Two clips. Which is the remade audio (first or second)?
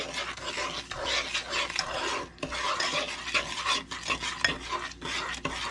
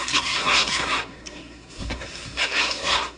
second